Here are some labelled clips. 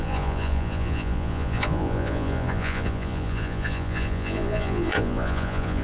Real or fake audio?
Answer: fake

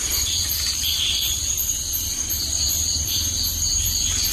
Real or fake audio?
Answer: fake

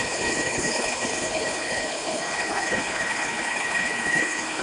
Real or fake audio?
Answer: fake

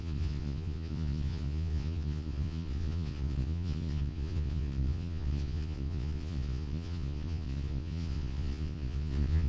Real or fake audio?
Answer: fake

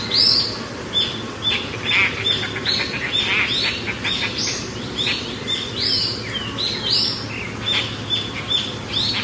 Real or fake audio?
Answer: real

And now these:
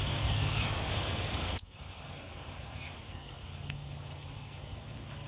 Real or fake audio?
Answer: fake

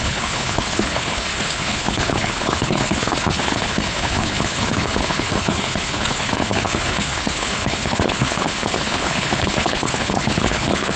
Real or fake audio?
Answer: fake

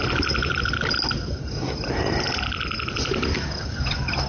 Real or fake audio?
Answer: real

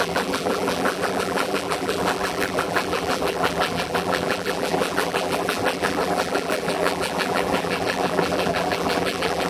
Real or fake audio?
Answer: fake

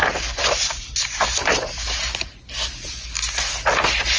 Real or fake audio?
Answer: real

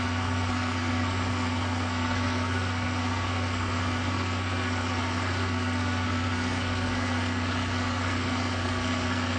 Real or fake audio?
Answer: fake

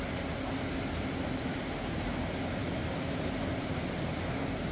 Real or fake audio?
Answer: real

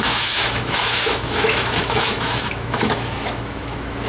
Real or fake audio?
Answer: fake